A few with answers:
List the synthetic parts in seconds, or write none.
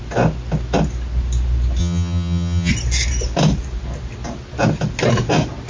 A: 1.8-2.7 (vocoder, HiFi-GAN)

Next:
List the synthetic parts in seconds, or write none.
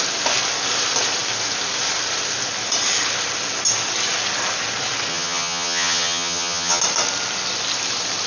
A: 5.1-6.8 (vocoder, HiFi-GAN)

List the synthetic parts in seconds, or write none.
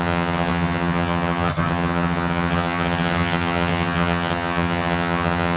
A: 0.0-5.6 (vocoder, HiFi-GAN)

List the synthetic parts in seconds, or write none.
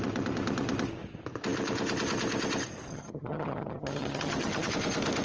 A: 2.9-4.7 (vocoder, HiFi-GAN)